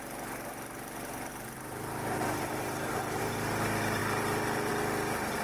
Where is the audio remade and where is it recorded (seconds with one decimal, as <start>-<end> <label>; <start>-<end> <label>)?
0.0-1.3 recorded; 1.3-3.2 remade; 3.2-5.4 recorded